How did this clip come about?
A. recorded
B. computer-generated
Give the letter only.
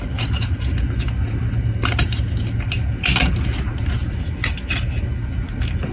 A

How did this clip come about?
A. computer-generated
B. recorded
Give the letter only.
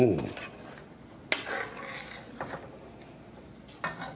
B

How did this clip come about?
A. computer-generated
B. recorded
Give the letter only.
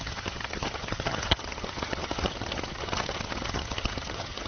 A